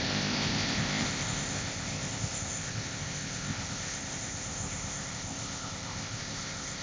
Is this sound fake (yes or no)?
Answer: yes